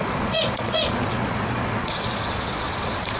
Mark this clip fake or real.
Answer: fake